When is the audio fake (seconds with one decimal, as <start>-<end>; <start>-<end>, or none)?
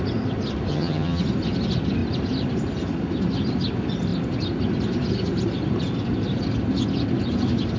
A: 0.7-1.2